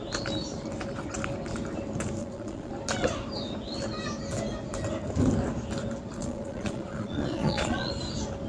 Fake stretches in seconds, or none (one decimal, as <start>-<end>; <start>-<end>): 2.2-2.7; 6.2-7.9